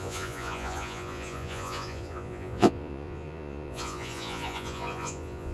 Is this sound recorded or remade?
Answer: remade